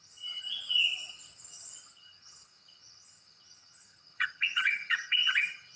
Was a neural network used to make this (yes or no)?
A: yes